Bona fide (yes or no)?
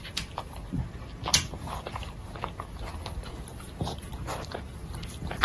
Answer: yes